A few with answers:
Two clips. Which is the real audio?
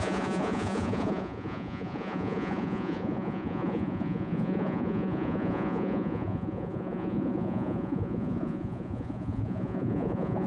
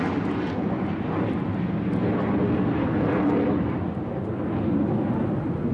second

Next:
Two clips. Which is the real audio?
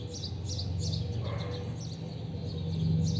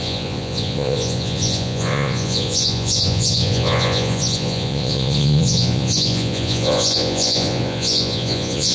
first